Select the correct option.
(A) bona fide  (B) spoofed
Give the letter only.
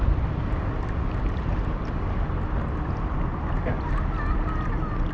A